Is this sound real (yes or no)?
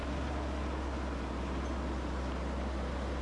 yes